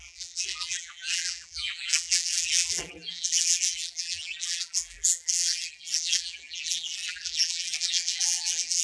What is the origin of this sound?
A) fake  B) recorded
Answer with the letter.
A